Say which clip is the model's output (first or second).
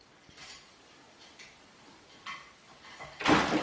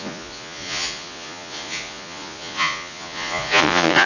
second